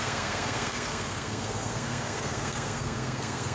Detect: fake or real fake